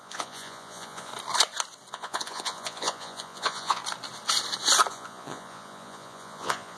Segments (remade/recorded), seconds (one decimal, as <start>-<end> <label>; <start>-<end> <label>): 0.0-1.1 remade; 1.1-1.9 recorded; 1.9-3.8 remade; 3.8-4.9 recorded; 4.9-6.8 remade